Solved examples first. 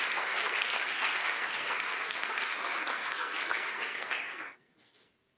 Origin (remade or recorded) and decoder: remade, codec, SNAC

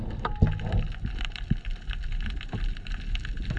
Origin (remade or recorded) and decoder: recorded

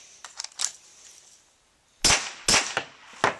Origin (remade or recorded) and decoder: recorded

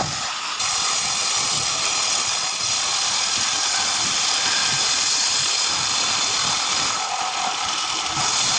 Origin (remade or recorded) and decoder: recorded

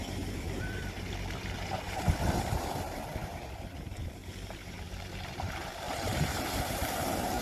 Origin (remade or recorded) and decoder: remade, vocoder, BigVGAN v2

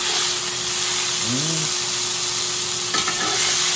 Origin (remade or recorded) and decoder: recorded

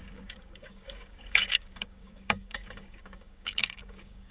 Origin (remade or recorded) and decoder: remade, codec, DAC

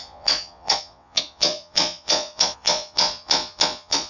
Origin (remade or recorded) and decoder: remade, vocoder, Vocos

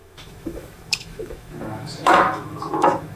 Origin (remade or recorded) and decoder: remade, autoencoder, DAC-VAE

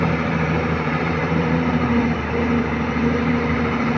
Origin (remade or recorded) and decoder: remade, vocoder, BigVGAN v2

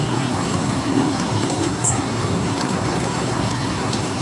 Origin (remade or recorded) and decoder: remade, codec, SNAC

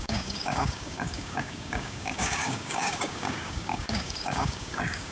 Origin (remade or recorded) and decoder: remade, codec, DAC